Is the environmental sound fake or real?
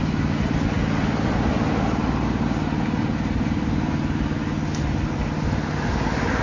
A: real